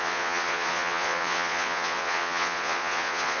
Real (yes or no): no